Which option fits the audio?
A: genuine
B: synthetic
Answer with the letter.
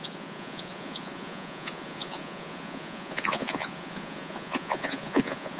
B